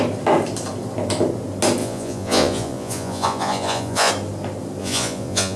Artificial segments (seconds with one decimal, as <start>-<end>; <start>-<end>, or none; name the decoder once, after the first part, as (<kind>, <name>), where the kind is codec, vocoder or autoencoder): 1.8-4.1 (vocoder, Vocos); 4.8-5.6